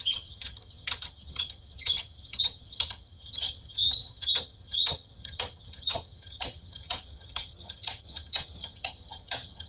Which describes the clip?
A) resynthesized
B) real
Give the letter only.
A